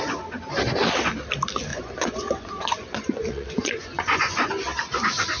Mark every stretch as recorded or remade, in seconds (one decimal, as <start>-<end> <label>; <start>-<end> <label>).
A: 0.0-1.7 recorded; 1.7-4.5 remade; 4.5-5.4 recorded